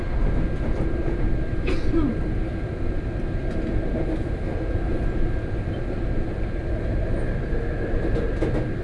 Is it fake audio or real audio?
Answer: real